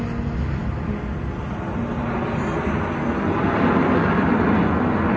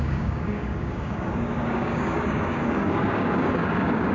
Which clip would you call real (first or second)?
first